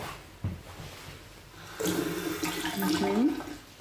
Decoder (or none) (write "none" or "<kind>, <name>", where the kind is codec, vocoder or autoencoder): none